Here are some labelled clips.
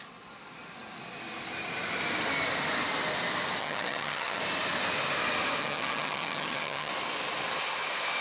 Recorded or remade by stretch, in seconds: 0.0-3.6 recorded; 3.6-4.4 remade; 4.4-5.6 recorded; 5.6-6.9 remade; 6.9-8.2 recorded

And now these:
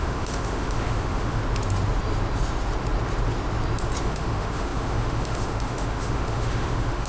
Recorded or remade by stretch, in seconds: 0.0-1.4 remade; 1.4-4.0 recorded; 4.0-7.1 remade